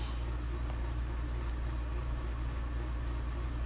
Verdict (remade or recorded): recorded